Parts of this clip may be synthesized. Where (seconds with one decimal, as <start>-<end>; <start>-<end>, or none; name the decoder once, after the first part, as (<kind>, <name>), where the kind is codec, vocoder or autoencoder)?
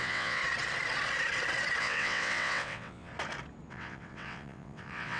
0.0-0.4 (vocoder, WaveNeXt); 1.8-3.1; 3.7-5.2